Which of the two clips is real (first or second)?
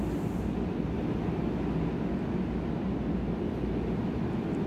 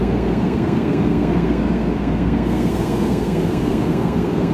first